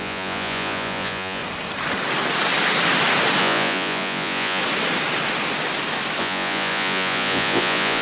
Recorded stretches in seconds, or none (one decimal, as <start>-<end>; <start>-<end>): 1.4-3.4; 4.6-6.2

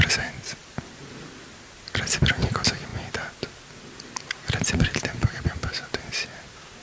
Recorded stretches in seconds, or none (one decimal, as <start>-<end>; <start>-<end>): 0.0-6.8

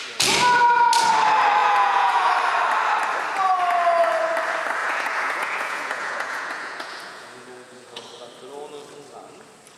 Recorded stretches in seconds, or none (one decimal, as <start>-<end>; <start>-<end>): 0.0-1.6; 2.3-4.8; 8.1-9.8

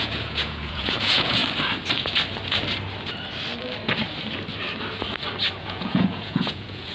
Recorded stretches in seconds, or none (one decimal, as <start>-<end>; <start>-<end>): 1.4-5.5